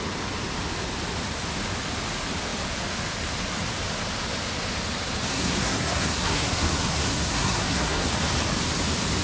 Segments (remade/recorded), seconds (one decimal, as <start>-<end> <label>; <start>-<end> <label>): 0.0-5.3 recorded; 5.3-8.1 remade; 8.1-9.2 recorded

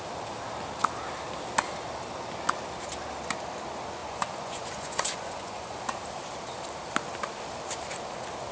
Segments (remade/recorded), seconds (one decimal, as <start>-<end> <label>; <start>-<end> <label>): 0.0-4.0 recorded; 4.0-5.8 remade; 5.8-8.5 recorded

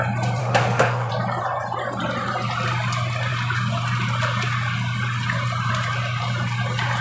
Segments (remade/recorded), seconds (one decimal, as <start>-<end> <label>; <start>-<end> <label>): 0.0-0.4 recorded; 0.4-1.1 remade; 1.1-7.0 recorded

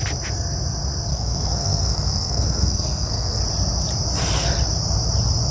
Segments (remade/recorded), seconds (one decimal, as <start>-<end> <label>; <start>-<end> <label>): 0.0-1.1 recorded; 1.1-3.4 remade; 3.4-5.5 recorded

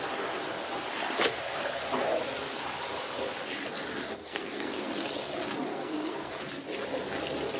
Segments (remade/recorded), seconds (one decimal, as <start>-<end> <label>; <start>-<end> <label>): 0.0-4.2 recorded; 4.2-4.9 remade; 4.9-5.7 recorded; 5.7-6.4 remade; 6.4-7.6 recorded